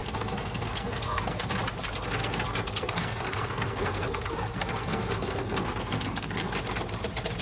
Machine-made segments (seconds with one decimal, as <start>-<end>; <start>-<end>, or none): 0.0-1.5; 2.2-6.5